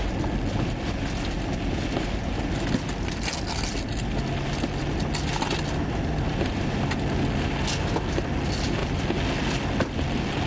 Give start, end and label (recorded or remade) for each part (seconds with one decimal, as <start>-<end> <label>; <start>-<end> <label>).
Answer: 0.0-10.5 recorded